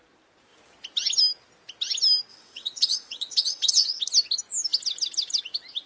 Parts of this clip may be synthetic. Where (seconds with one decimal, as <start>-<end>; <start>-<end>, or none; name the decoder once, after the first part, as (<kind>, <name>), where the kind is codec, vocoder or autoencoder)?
2.3-4.0 (vocoder, WaveNeXt)